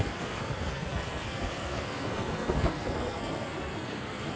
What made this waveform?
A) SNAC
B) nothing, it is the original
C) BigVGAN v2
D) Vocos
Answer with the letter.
A